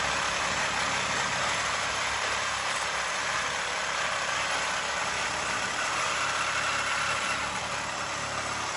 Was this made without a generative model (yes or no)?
yes